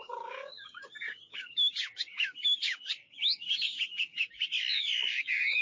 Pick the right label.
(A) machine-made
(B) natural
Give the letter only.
A